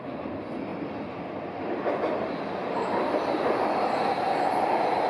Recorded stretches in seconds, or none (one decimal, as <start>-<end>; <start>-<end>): 0.0-5.1